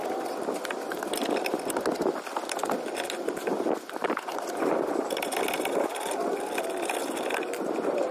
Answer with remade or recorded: remade